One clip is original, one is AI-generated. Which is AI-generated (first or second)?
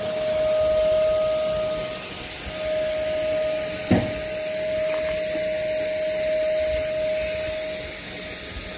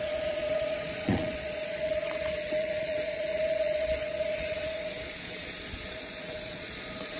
second